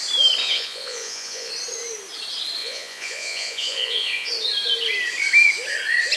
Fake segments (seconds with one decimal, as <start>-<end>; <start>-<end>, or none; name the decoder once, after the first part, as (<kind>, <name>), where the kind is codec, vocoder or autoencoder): 0.4-1.5 (vocoder, Vocos); 2.6-4.3